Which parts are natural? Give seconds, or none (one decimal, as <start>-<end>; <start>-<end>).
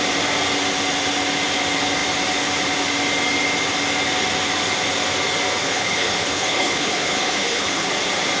0.0-5.6; 7.9-8.4